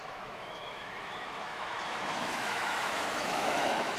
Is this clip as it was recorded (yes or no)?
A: no